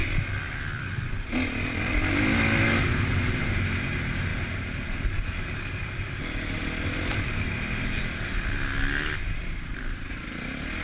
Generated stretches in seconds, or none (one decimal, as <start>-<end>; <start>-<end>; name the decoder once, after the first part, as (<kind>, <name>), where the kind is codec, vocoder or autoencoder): 2.9-3.6 (vocoder, BigVGAN v2)